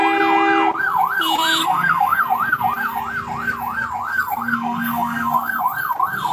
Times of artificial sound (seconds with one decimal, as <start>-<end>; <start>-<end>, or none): 1.6-2.2; 4.1-5.6